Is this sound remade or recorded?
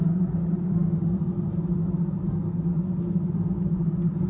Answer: recorded